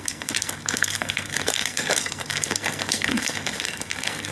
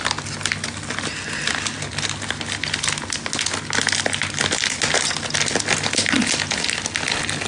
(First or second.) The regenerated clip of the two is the first